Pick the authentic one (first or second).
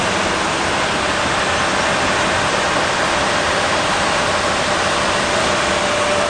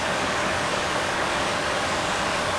first